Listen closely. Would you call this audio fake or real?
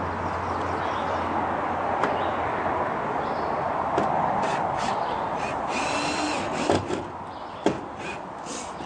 real